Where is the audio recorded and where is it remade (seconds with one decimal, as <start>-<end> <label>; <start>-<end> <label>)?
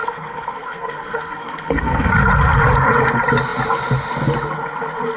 0.0-2.1 remade; 2.1-5.2 recorded